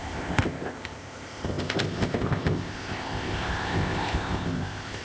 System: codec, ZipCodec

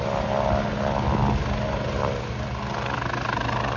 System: none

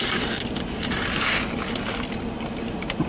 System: none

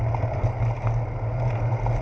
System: none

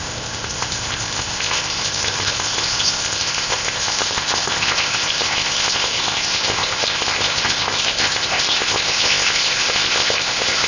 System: codec, ZipCodec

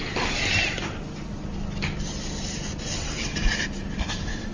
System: none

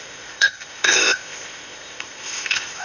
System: codec, ZipCodec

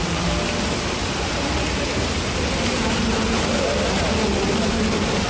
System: none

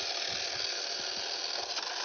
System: none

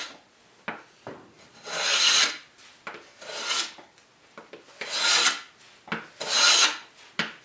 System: none